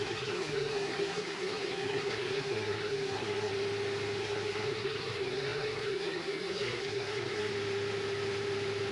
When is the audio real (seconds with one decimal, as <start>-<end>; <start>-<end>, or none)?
3.5-4.2; 7.5-8.9